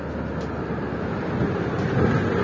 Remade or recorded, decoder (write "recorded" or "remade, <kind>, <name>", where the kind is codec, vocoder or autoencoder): recorded